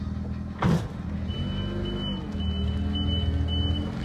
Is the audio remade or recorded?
recorded